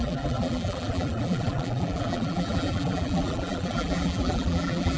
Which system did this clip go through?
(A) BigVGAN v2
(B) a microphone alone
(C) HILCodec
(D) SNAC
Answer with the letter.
A